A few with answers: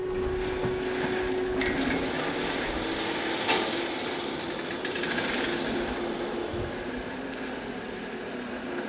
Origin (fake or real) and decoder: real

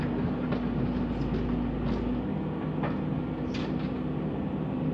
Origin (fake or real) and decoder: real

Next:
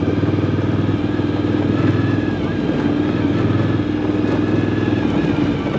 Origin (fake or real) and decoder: real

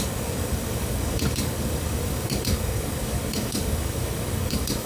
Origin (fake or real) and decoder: fake, codec, DAC